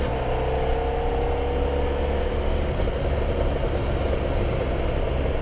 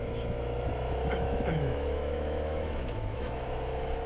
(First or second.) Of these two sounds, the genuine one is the first